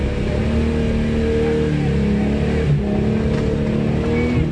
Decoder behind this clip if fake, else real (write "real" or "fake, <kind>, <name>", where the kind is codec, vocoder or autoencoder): real